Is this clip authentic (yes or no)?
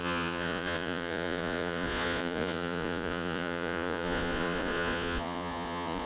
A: no